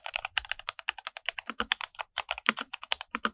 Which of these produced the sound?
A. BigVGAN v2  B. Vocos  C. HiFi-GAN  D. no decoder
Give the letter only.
A